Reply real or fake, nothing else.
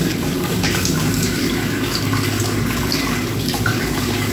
fake